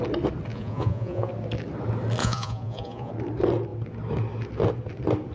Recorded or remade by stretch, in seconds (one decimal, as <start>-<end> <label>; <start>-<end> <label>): 0.0-0.5 recorded; 0.5-1.3 remade; 1.3-2.2 recorded; 2.2-3.1 remade; 3.1-5.3 recorded